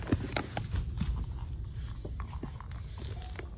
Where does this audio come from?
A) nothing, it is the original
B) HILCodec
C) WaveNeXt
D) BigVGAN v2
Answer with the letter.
A